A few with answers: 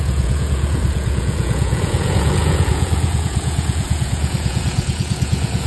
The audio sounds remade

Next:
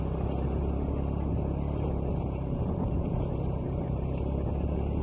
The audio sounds recorded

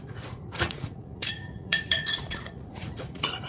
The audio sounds remade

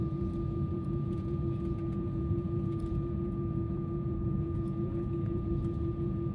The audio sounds remade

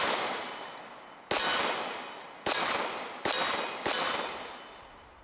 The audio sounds recorded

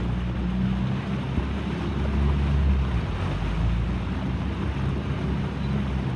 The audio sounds recorded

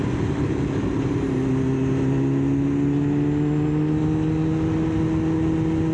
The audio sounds recorded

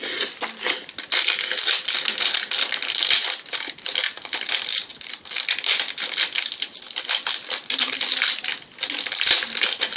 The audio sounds recorded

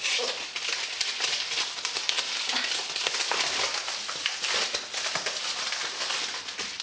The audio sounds recorded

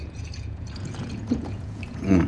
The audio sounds remade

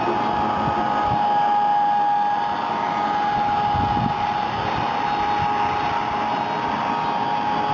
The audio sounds recorded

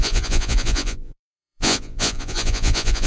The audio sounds remade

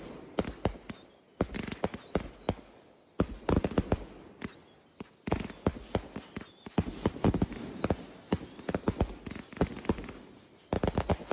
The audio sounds recorded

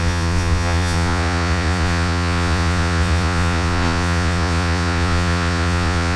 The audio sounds remade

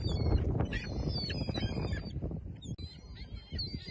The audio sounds recorded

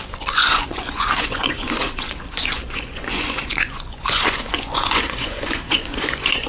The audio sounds remade